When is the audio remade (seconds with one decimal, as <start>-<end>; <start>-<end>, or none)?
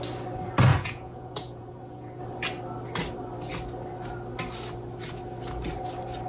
0.7-2.2